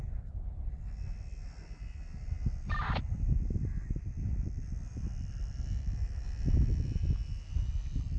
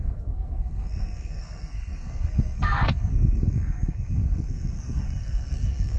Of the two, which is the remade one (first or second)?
second